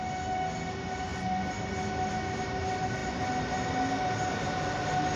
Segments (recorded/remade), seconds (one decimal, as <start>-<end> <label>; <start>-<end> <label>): 0.0-5.2 recorded